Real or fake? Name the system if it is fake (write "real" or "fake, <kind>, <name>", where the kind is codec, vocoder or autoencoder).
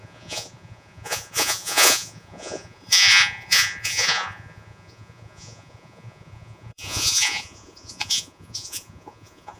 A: fake, vocoder, Vocos